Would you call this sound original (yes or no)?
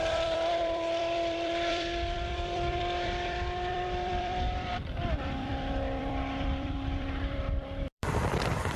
no